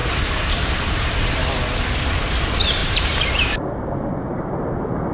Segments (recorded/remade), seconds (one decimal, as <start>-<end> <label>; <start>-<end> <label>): 0.0-1.3 remade; 1.3-2.8 recorded; 2.8-4.5 remade; 4.5-5.1 recorded